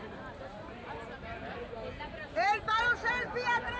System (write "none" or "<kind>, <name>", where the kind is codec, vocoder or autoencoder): vocoder, BigVGAN v2